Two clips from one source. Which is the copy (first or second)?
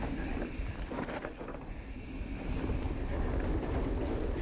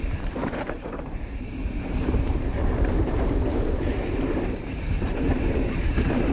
second